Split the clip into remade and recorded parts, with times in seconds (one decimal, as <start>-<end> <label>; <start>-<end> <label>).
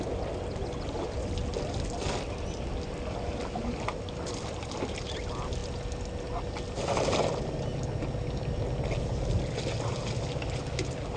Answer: 0.0-11.2 recorded